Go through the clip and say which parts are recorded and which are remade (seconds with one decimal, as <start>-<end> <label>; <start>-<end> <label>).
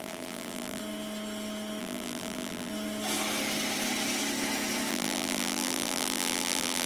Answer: 0.0-0.8 remade; 0.8-1.8 recorded; 1.8-2.7 remade; 2.7-4.9 recorded; 4.9-6.9 remade